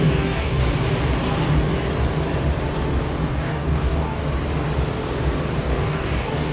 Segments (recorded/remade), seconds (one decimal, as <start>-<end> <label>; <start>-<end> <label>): 0.0-0.6 remade; 0.6-3.2 recorded; 3.2-4.2 remade; 4.2-5.6 recorded; 5.6-6.5 remade